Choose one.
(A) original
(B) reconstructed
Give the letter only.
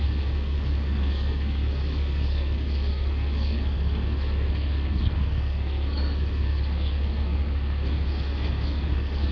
B